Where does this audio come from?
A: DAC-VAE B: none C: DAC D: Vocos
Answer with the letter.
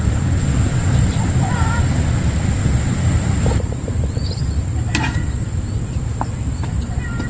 B